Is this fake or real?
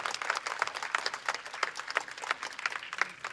real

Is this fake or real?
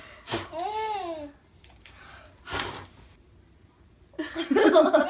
real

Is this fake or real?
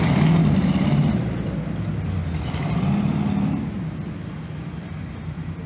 real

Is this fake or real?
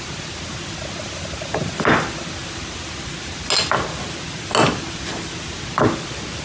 real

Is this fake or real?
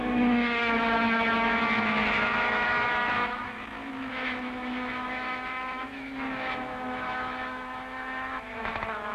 fake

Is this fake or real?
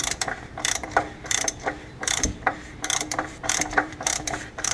fake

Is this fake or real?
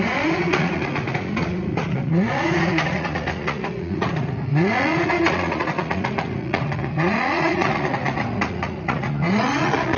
fake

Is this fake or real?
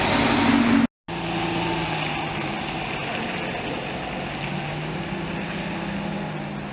real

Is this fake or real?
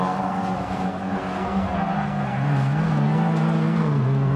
fake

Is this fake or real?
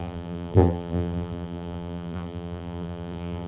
fake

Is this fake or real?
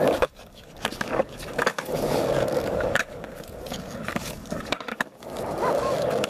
fake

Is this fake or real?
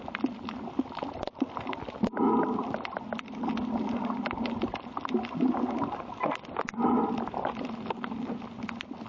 real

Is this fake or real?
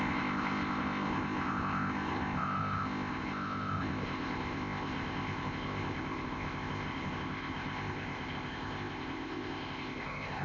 fake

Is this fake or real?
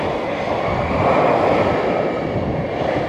real